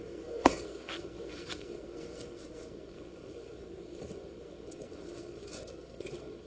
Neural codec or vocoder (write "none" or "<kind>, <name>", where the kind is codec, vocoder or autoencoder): codec, SNAC